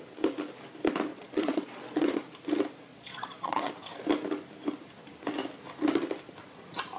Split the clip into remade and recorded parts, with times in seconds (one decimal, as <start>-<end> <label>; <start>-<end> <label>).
0.0-1.1 recorded; 1.1-2.2 remade; 2.2-2.9 recorded; 2.9-3.7 remade; 3.7-7.0 recorded